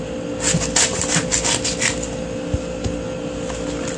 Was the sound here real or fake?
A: real